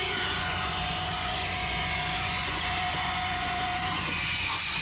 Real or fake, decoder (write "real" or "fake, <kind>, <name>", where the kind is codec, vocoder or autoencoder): fake, vocoder, Vocos